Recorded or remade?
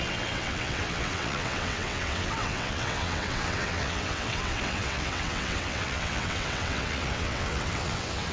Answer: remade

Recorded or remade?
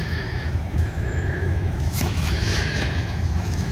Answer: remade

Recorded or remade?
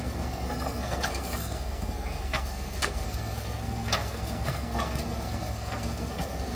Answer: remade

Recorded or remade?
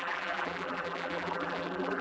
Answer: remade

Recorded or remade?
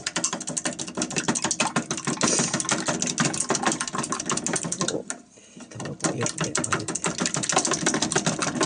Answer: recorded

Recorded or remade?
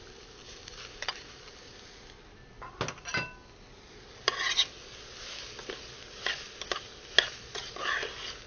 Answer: recorded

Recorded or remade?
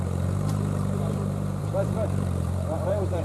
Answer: remade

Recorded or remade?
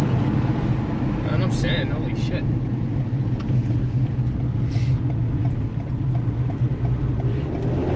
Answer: recorded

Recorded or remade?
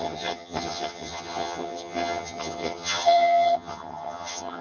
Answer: remade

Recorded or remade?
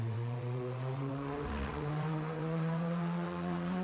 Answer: remade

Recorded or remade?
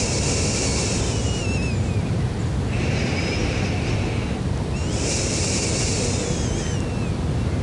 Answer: recorded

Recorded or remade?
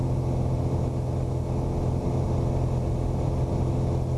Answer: recorded